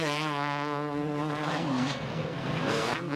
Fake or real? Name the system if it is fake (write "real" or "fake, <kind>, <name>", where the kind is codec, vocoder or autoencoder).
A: fake, codec, SNAC